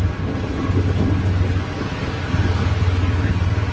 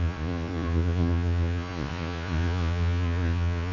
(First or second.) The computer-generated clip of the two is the second